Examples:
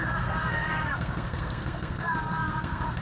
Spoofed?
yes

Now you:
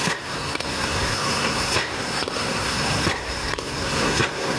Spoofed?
yes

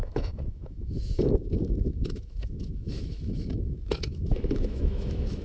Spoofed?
yes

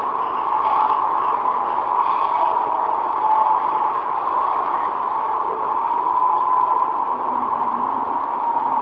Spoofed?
no